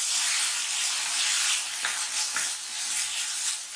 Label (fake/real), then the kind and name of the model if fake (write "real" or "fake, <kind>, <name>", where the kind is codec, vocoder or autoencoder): real